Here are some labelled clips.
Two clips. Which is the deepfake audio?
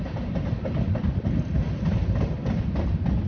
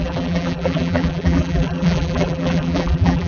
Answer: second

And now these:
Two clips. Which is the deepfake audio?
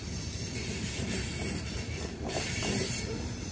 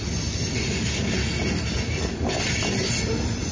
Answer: first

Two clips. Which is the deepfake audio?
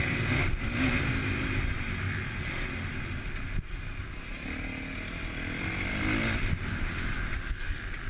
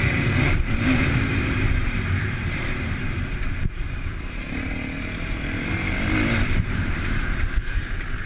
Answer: second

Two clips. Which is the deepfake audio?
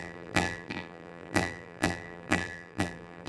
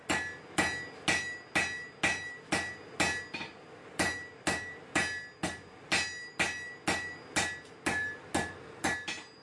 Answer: first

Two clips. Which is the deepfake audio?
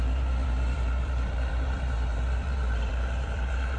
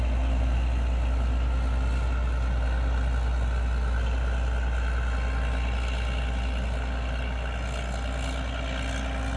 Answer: first